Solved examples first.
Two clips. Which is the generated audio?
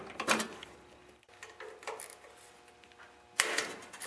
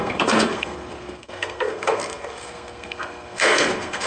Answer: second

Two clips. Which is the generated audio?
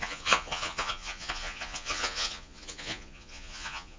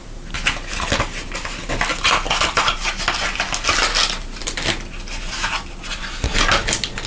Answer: first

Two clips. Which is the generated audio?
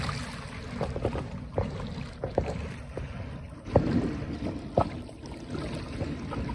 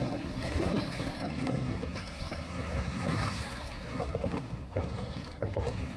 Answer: second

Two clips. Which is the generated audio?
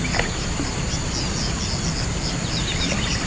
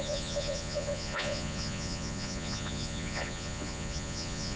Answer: second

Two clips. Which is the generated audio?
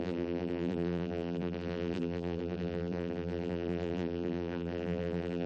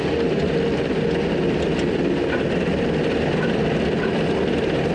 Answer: first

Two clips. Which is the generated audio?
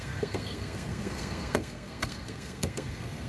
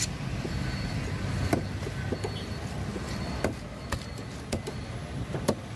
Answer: first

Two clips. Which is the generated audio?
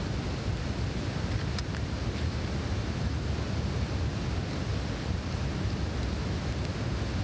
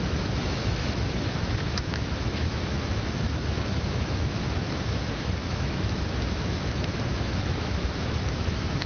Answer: second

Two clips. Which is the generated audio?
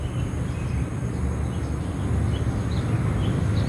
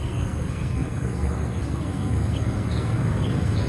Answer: second